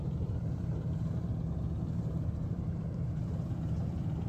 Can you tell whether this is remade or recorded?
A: remade